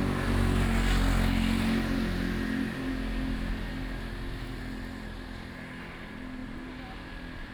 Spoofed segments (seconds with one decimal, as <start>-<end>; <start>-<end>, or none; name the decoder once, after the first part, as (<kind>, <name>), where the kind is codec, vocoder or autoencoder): none